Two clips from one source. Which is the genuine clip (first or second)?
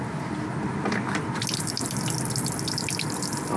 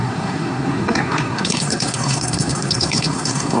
first